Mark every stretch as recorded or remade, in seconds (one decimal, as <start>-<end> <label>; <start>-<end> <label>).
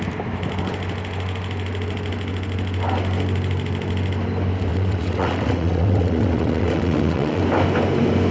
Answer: 0.0-4.7 recorded; 4.7-7.4 remade; 7.4-8.3 recorded